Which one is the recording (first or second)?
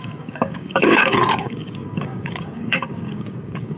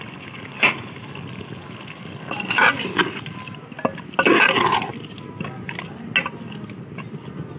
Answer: second